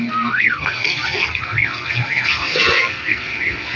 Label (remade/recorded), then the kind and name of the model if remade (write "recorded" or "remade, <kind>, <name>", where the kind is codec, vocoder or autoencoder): remade, codec, SNAC